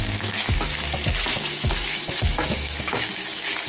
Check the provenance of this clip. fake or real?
fake